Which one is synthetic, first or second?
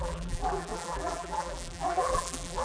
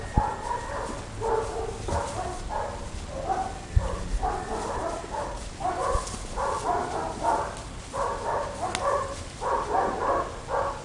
first